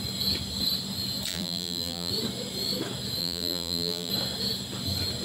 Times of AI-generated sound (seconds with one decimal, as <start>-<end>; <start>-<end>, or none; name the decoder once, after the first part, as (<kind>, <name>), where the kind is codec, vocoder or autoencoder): 1.3-2.1 (vocoder, BigVGAN v2); 3.2-4.1